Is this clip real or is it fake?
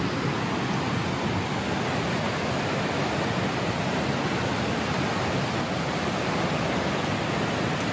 real